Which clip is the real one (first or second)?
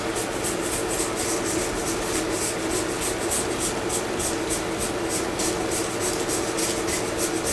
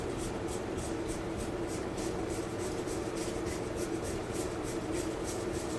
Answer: first